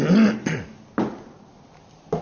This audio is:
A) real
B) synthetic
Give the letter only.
A